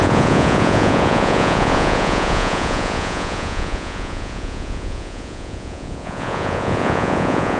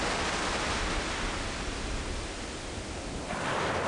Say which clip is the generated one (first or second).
first